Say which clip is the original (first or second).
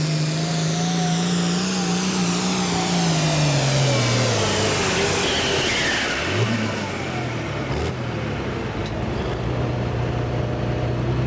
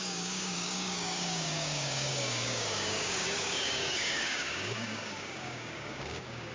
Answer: first